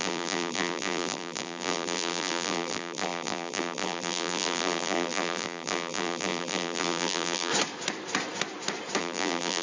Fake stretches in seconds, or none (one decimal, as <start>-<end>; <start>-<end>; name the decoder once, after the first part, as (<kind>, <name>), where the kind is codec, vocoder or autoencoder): 0.0-7.5 (vocoder, BigVGAN v2); 9.0-9.6